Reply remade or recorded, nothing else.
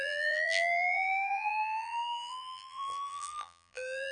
remade